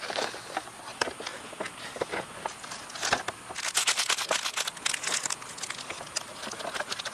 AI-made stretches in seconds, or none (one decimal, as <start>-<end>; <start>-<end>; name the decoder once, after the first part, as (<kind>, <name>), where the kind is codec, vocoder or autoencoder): none